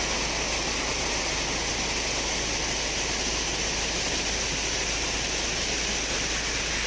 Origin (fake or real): real